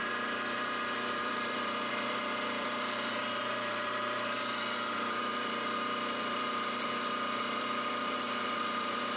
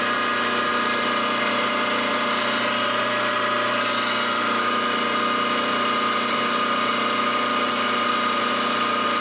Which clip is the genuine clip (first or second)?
second